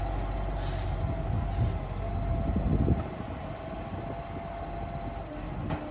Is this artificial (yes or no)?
no